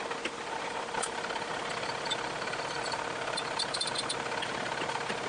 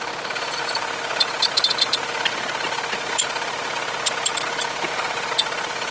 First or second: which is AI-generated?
first